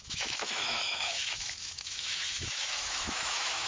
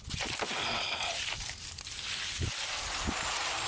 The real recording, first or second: second